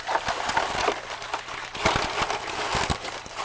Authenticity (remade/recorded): recorded